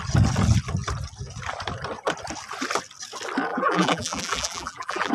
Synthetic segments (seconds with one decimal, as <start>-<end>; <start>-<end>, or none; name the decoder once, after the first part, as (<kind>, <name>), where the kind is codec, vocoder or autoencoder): 3.5-5.1 (vocoder, BigVGAN v2)

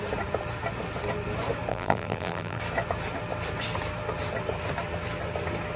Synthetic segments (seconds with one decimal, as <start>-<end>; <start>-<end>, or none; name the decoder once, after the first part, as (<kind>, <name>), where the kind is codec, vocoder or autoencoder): 1.7-2.6 (vocoder, BigVGAN v2)

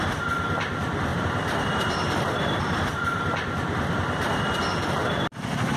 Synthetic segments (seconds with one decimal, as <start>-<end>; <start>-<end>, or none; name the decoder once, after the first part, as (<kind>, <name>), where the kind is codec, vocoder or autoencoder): 1.1-4.6 (vocoder, BigVGAN v2)

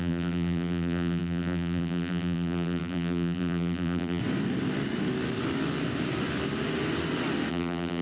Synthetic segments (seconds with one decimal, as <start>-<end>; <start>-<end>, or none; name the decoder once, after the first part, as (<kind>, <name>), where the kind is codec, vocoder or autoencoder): 0.0-4.2 (vocoder, BigVGAN v2); 7.5-8.0

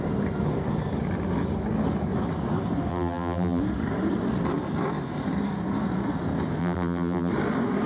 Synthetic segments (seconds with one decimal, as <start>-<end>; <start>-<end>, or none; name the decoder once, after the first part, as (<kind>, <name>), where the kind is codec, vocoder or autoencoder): 2.9-3.6 (vocoder, BigVGAN v2); 6.6-7.3

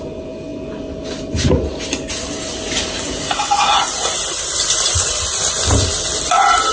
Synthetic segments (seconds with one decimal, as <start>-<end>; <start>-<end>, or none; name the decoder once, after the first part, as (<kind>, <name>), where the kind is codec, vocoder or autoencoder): 4.3-5.2 (vocoder, BigVGAN v2)

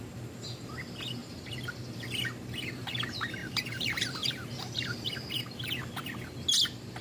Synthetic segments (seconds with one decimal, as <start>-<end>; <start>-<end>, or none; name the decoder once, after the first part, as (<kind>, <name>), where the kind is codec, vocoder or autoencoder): 3.4-4.5 (vocoder, BigVGAN v2)